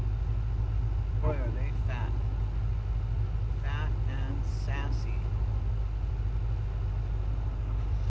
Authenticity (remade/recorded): recorded